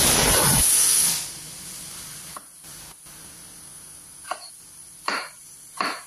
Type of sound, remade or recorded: recorded